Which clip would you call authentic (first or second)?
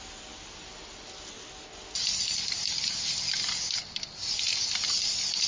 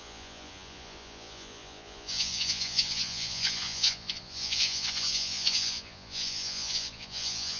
first